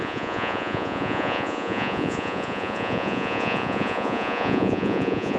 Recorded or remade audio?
remade